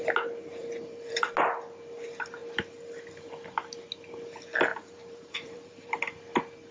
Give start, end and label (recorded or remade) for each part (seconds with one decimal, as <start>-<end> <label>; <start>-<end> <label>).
0.0-0.6 recorded; 0.6-1.3 remade; 1.3-4.7 recorded; 4.7-5.9 remade; 5.9-6.7 recorded